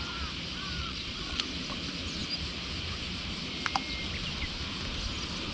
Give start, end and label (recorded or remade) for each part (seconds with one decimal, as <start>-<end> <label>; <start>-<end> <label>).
0.0-0.8 recorded; 0.8-1.4 remade; 1.4-5.5 recorded